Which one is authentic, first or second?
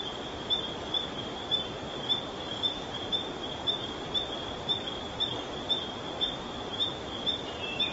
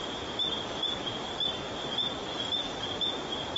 second